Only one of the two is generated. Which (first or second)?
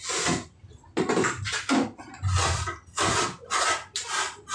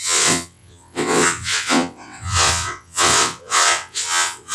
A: second